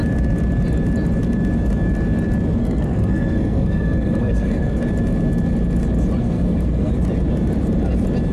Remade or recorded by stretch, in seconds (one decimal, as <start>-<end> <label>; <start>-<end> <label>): 0.0-2.6 recorded; 2.6-4.8 remade; 4.8-6.2 recorded; 6.2-6.9 remade; 6.9-8.3 recorded